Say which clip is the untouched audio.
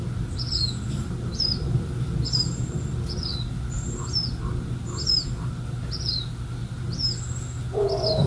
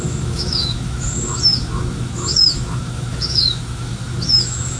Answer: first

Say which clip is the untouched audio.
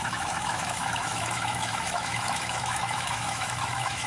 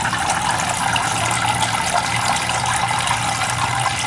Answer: second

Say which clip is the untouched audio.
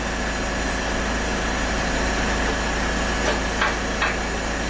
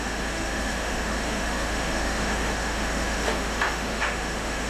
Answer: first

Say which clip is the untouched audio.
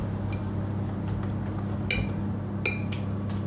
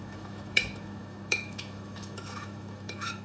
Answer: first